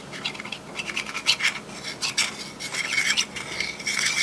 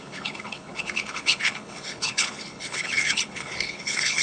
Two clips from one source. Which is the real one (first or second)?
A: first